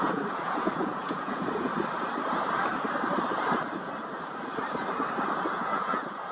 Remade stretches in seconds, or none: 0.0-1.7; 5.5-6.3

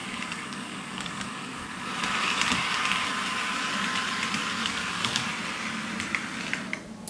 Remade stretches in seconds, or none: 0.0-1.9; 4.6-5.3